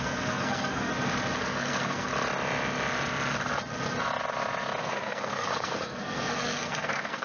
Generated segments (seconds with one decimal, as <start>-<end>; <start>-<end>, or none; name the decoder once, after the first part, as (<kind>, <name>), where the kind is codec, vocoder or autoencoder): 0.0-0.9 (codec, SNAC); 1.4-2.1; 4.8-7.2